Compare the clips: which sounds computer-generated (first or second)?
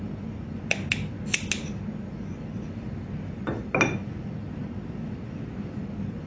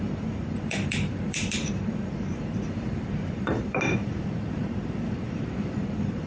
second